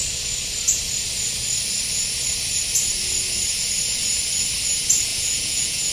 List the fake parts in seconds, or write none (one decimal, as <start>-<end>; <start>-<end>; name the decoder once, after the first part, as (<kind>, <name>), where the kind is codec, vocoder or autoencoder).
5.1-5.9 (vocoder, Vocos)